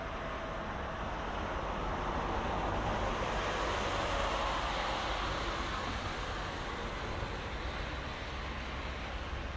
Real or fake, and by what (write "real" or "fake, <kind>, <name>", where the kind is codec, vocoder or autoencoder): real